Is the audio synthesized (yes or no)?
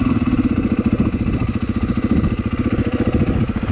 no